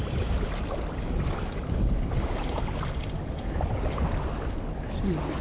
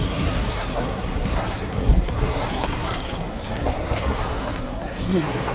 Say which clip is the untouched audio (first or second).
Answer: first